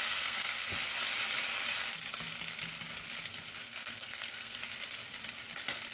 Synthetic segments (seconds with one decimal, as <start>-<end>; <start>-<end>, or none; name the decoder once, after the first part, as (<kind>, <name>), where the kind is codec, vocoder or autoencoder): 0.0-0.7 (codec, SNAC); 3.6-4.6

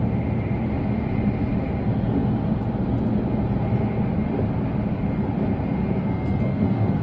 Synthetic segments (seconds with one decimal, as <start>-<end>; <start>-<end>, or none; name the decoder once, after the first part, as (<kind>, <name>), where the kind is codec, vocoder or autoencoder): 6.0-7.0 (codec, SNAC)